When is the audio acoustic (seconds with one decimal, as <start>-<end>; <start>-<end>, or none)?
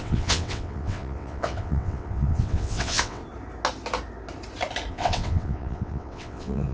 3.2-4.9